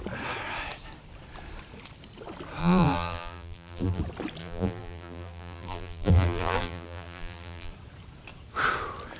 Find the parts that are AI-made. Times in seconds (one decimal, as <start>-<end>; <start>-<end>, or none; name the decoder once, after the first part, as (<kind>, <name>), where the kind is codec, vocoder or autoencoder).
2.6-4.0 (vocoder, BigVGAN v2); 4.4-7.7

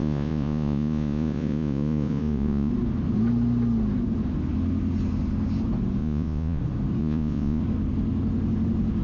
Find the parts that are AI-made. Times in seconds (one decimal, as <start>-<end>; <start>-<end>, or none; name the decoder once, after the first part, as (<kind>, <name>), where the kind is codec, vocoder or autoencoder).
0.0-2.7 (vocoder, Vocos); 6.0-6.6; 7.0-7.6

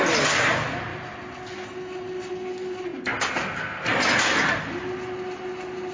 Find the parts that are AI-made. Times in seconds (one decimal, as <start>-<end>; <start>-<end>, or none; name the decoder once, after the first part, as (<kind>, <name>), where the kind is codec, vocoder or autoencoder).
none

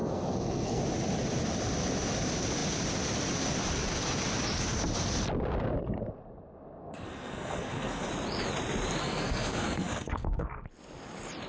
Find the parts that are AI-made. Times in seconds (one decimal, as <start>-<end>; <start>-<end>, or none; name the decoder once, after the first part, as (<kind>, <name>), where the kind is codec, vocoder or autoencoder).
0.0-0.8 (codec, SNAC); 6.8-8.1; 9.0-10.6

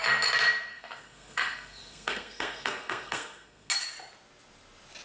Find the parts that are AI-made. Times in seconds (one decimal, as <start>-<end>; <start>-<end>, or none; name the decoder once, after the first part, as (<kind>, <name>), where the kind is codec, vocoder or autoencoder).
0.7-3.7 (codec, SNAC)

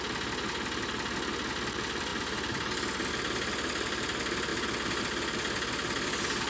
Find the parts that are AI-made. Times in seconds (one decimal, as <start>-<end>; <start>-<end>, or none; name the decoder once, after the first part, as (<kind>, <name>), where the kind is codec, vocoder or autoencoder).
none